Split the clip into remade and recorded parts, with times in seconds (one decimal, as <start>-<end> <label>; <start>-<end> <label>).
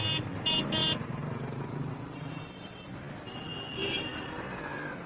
0.0-5.1 recorded